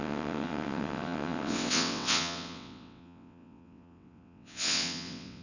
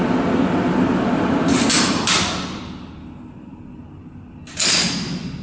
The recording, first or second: second